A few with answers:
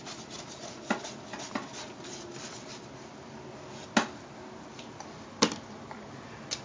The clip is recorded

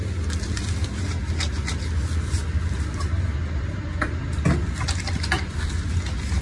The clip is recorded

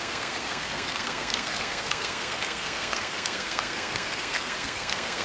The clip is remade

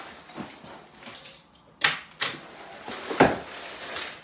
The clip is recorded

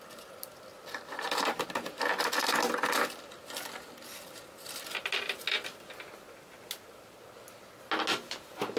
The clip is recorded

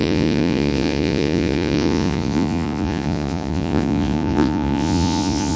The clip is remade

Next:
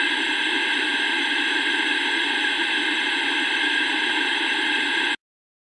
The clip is recorded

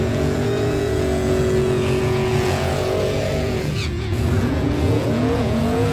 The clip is remade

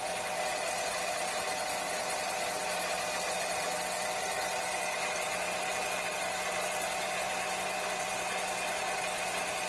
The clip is recorded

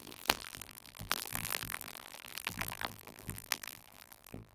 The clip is remade